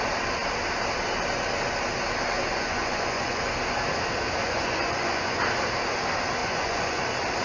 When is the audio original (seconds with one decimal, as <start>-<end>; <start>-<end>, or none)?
0.0-2.5; 3.5-4.4; 5.4-6.4; 7.0-7.4